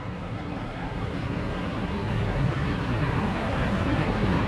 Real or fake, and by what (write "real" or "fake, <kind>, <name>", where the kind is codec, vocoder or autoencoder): fake, codec, SNAC